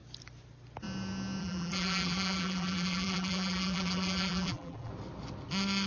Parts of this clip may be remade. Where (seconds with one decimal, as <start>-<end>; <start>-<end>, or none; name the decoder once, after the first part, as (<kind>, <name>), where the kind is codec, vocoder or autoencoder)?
1.4-4.9 (vocoder, BigVGAN v2)